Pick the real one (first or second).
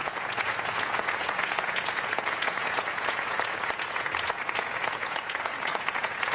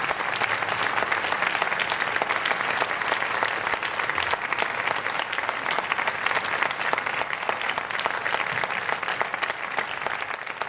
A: second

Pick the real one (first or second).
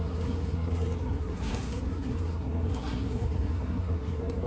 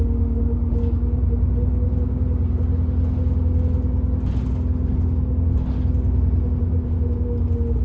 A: second